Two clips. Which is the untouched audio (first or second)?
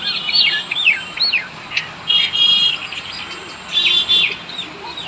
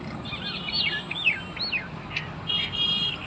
second